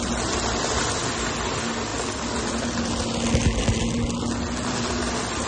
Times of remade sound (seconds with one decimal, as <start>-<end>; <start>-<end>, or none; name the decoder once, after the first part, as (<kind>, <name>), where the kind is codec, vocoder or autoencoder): none